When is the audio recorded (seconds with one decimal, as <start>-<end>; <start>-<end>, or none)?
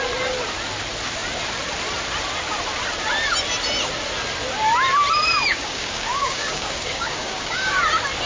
0.0-5.5; 7.8-8.3